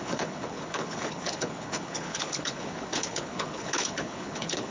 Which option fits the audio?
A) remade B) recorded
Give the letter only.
A